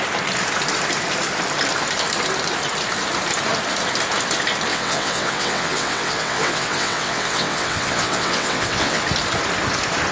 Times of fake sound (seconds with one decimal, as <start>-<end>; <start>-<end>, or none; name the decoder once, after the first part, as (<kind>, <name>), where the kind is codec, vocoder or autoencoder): 4.7-9.0 (vocoder, WaveNeXt)